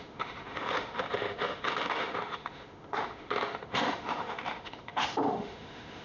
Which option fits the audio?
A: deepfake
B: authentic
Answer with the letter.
A